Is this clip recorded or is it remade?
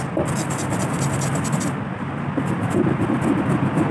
recorded